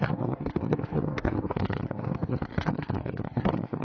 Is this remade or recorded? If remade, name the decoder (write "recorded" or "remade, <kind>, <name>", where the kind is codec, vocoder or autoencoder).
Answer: remade, codec, SNAC